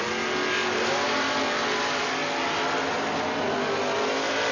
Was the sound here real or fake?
real